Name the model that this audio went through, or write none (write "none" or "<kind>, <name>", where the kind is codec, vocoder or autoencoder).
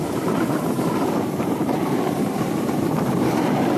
vocoder, BigVGAN v2